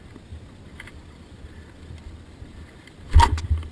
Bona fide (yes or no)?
yes